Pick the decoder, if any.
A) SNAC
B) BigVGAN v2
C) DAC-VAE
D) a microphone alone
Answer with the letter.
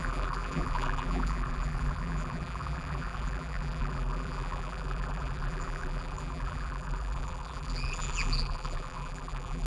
B